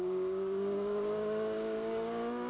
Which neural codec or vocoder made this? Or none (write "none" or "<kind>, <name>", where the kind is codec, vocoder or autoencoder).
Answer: codec, DAC